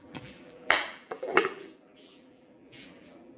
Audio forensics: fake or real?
fake